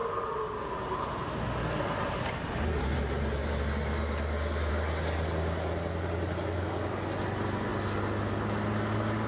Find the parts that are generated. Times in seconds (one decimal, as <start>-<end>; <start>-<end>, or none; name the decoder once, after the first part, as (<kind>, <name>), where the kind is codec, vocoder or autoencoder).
none